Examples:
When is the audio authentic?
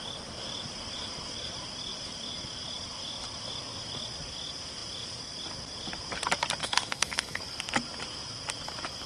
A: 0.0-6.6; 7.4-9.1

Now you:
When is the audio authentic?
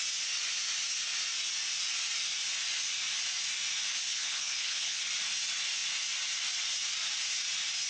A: 0.0-4.1; 5.0-7.9